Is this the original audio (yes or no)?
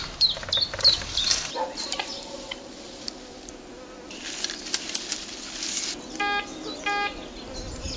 yes